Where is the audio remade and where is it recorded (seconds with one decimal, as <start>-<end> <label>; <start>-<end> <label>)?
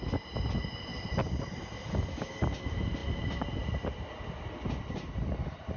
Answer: 0.0-0.9 recorded; 0.9-1.6 remade; 1.6-5.8 recorded